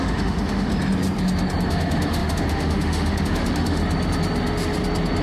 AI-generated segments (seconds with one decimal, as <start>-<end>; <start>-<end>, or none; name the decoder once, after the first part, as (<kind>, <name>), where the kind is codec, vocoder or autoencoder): 0.0-0.7 (autoencoder, DAC-VAE); 1.7-3.8